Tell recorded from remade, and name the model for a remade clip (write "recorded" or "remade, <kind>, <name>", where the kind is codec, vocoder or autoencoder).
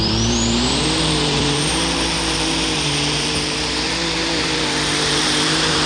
remade, vocoder, BigVGAN v2